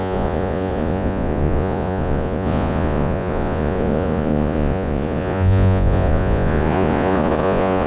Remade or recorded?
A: remade